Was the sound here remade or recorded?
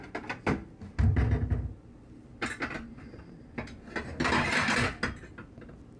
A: recorded